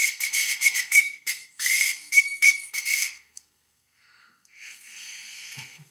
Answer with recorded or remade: remade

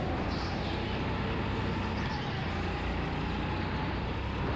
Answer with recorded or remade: recorded